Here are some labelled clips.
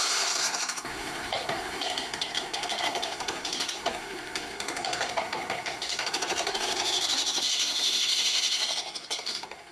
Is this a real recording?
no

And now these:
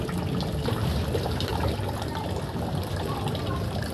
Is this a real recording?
no